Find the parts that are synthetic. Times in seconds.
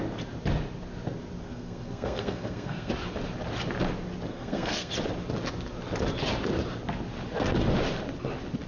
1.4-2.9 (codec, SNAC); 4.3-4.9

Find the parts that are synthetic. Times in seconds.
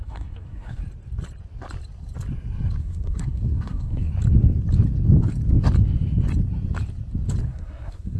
0.0-0.8 (codec, SNAC); 2.8-4.1; 7.4-8.2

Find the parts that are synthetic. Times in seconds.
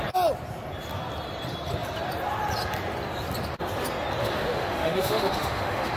4.2-6.0 (autoencoder, DAC-VAE)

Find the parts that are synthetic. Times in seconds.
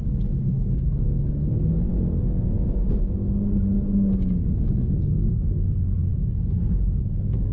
0.5-1.7 (codec, SNAC)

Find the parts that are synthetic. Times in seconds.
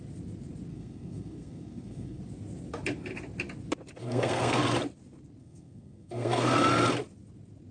0.7-2.2 (codec, SNAC); 4.0-4.6; 5.4-6.6